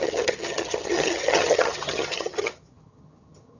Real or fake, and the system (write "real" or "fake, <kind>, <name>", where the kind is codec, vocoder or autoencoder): fake, vocoder, HiFi-GAN